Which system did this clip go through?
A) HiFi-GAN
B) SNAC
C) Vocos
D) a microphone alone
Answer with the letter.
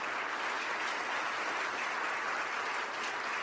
D